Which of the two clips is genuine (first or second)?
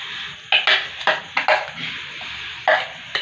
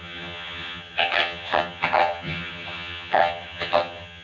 first